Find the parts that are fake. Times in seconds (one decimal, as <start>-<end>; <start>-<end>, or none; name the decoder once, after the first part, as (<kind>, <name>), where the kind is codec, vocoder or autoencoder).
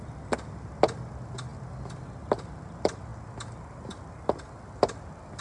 none